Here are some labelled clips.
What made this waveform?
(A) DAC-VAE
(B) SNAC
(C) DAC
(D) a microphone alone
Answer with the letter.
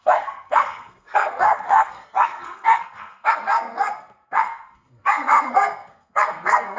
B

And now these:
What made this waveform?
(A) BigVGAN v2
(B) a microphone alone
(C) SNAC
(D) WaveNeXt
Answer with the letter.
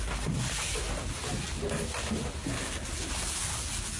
B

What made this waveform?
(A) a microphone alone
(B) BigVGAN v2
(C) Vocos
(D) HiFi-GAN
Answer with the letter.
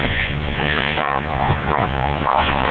C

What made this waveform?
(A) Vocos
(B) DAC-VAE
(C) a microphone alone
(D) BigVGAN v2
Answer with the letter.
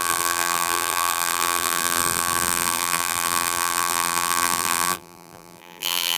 D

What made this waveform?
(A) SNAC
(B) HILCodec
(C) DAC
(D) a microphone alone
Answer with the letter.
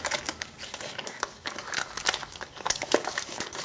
C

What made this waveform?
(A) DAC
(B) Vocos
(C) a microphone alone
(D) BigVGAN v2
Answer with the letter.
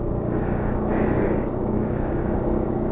A